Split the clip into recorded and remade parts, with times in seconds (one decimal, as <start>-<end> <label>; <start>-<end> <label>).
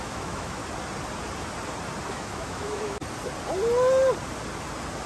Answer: 0.0-0.6 remade; 0.6-2.1 recorded; 2.1-3.0 remade; 3.0-5.1 recorded